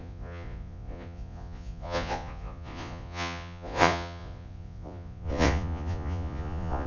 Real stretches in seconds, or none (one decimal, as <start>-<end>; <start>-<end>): none